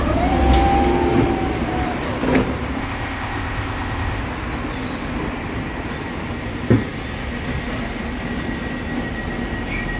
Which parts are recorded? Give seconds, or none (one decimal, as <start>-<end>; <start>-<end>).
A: 0.0-2.8; 4.2-10.0